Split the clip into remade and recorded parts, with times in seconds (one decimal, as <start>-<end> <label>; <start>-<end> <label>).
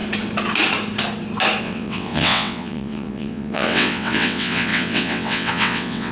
0.0-1.6 recorded; 1.6-6.1 remade